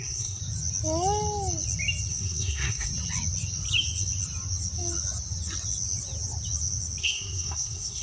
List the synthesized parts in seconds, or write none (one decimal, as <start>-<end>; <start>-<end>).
0.0-0.4; 2.1-2.9; 7.0-8.0